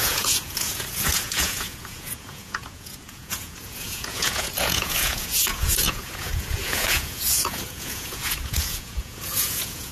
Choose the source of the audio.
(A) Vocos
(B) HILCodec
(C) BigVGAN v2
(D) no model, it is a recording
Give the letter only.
A